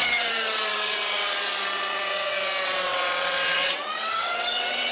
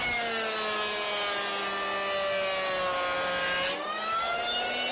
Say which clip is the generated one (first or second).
first